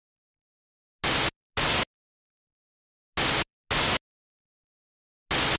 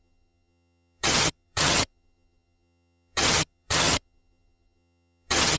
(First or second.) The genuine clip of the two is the first